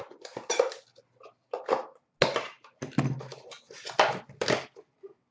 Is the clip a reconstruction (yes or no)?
no